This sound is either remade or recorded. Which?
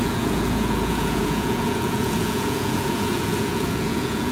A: remade